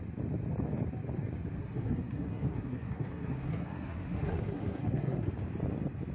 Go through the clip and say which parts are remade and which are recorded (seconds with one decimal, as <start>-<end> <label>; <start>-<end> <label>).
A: 0.0-1.6 recorded; 1.6-5.3 remade; 5.3-6.1 recorded

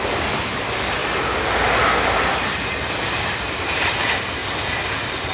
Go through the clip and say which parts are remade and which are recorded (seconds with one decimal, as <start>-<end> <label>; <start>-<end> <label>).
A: 0.0-1.0 remade; 1.0-3.6 recorded; 3.6-4.4 remade; 4.4-5.3 recorded

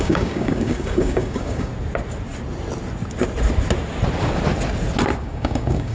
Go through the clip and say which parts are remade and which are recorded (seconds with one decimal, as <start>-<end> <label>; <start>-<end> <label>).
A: 0.0-1.7 remade; 1.7-5.2 recorded; 5.2-5.9 remade

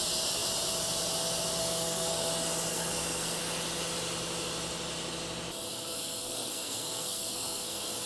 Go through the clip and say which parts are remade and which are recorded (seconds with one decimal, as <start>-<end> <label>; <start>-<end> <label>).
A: 0.0-1.6 recorded; 1.6-2.3 remade; 2.3-2.7 recorded; 2.7-3.4 remade; 3.4-5.7 recorded; 5.7-8.1 remade

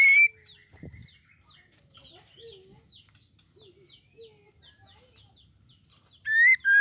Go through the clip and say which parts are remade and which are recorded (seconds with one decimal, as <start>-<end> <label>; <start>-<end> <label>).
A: 0.0-6.8 recorded

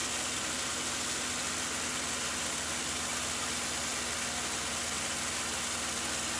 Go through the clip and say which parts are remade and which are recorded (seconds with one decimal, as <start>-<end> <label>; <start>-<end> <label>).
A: 0.0-6.4 recorded

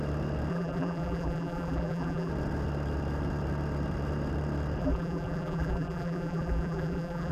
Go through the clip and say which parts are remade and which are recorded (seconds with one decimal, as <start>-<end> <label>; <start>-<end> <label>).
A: 0.0-0.5 recorded; 0.5-2.3 remade; 2.3-4.8 recorded; 4.8-7.3 remade